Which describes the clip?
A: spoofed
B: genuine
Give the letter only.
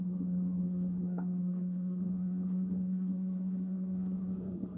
A